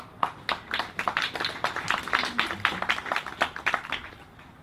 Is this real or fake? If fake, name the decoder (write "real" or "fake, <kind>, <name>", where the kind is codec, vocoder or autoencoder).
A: real